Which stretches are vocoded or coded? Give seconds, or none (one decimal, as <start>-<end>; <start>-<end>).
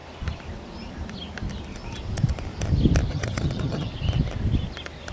3.1-3.9